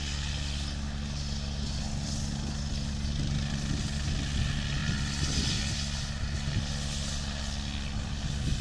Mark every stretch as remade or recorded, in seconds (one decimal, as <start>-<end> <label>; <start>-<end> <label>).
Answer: 0.0-8.6 recorded